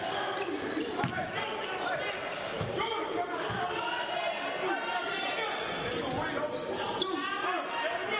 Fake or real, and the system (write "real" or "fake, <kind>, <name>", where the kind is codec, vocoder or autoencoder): real